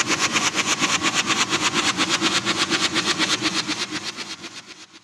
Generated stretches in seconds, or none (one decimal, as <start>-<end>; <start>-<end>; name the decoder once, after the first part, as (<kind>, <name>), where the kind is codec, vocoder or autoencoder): 0.0-5.0 (vocoder, Vocos)